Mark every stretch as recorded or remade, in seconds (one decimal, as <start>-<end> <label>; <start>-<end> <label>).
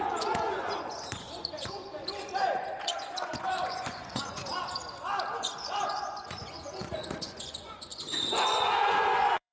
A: 0.0-1.8 remade; 1.8-2.4 recorded; 2.4-4.4 remade; 4.4-5.4 recorded; 5.4-9.5 remade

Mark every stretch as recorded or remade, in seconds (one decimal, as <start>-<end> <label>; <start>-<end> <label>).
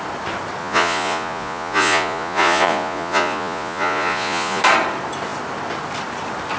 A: 0.0-0.6 recorded; 0.6-4.6 remade; 4.6-6.6 recorded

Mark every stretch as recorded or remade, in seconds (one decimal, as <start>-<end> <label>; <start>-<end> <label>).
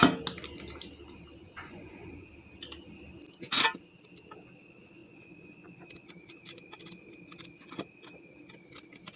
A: 0.0-1.4 recorded; 1.4-2.3 remade; 2.3-5.0 recorded; 5.0-5.9 remade; 5.9-9.2 recorded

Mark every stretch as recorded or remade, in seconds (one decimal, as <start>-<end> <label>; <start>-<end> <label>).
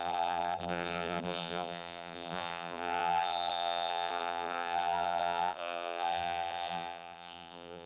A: 0.0-7.9 remade